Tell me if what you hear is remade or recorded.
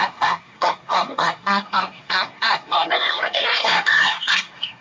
remade